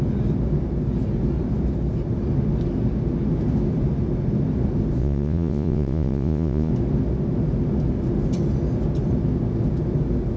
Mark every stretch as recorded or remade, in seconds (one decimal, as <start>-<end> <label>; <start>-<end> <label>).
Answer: 0.0-5.0 recorded; 5.0-6.7 remade; 6.7-10.4 recorded